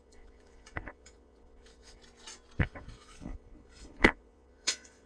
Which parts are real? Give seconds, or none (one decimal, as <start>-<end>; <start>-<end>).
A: 2.0-2.6